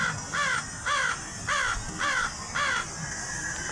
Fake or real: real